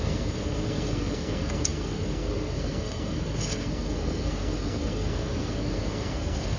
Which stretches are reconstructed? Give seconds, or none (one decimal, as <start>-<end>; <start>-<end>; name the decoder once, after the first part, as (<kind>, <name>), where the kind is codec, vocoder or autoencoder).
0.0-6.6 (codec, SNAC)